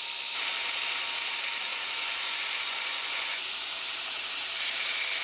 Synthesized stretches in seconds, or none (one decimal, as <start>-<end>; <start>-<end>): 1.7-3.4